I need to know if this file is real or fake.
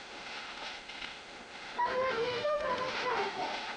fake